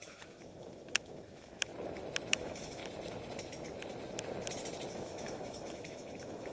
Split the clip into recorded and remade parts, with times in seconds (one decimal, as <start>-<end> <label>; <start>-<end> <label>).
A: 0.0-1.7 remade; 1.7-2.3 recorded; 2.3-2.8 remade; 2.8-4.9 recorded; 4.9-6.5 remade